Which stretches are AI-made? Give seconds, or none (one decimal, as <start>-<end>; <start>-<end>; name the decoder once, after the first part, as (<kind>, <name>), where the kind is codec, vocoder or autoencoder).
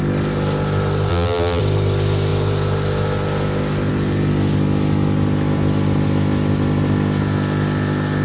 1.1-1.6 (vocoder, BigVGAN v2)